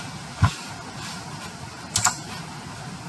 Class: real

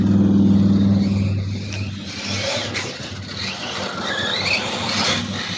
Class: real